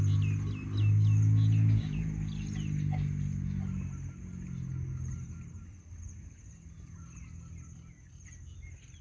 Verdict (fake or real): real